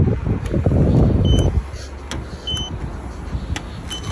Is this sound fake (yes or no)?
no